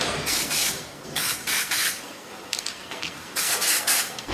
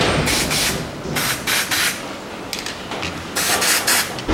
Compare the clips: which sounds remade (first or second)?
first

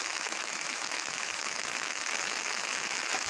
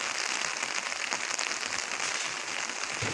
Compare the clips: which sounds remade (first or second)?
first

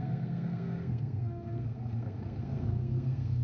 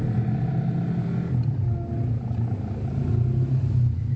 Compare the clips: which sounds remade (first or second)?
first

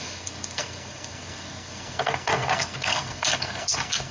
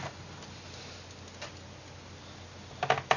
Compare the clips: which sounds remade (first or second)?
first